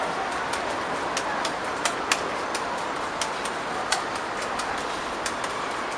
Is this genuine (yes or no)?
yes